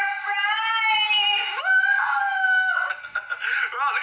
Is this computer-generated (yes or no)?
no